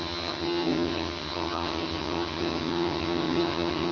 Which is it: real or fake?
fake